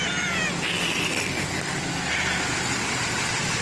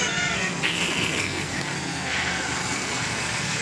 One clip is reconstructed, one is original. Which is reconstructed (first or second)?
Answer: second